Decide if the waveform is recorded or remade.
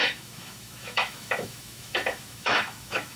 remade